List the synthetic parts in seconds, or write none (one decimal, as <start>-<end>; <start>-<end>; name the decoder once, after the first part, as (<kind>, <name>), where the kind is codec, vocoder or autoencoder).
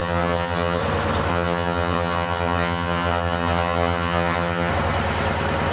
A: 0.0-0.8 (vocoder, HiFi-GAN); 1.3-4.7